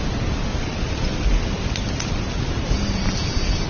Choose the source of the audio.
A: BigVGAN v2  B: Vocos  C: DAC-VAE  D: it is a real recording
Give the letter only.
D